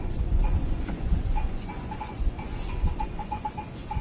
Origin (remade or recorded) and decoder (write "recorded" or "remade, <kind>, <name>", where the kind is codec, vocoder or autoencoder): remade, vocoder, Vocos